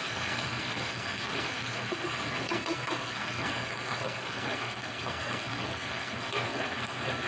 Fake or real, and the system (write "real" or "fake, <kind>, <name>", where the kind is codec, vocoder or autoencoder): fake, codec, SNAC